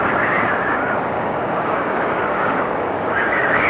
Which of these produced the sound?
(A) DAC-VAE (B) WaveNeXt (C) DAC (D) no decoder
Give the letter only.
C